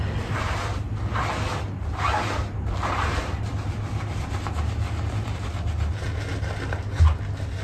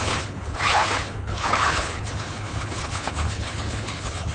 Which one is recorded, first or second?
first